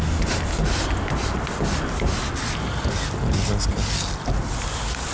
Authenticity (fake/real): real